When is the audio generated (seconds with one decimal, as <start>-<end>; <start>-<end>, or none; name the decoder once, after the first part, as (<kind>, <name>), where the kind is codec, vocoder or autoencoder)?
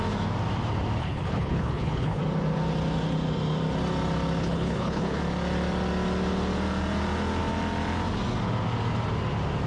1.0-2.2 (codec, HILCodec); 4.4-5.2